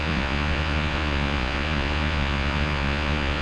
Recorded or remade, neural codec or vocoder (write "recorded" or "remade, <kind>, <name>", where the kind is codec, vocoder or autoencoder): remade, vocoder, Vocos